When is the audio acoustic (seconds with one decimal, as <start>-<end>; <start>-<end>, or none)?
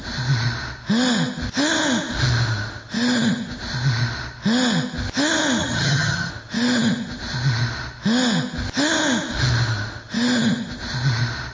0.0-5.6; 6.3-11.5